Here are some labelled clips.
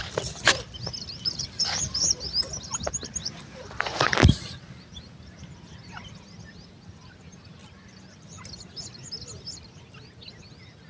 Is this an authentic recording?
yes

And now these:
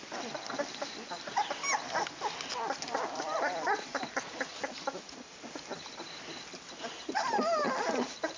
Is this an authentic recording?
yes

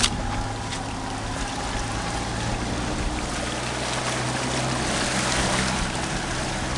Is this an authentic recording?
yes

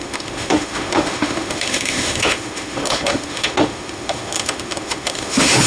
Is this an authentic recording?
no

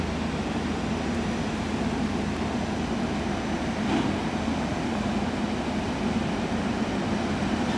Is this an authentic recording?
yes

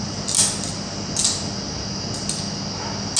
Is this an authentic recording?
yes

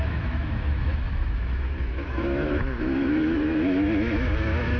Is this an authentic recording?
no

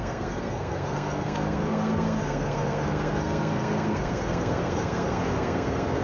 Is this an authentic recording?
no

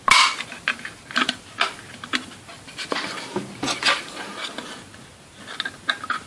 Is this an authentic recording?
yes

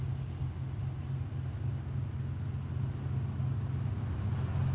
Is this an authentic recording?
yes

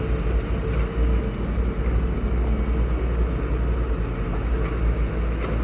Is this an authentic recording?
yes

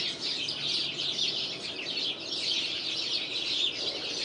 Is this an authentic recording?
yes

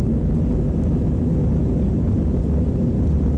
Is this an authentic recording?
yes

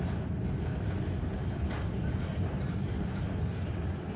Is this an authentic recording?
yes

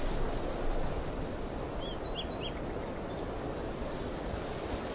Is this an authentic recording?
yes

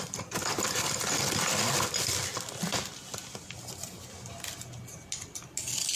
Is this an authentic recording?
yes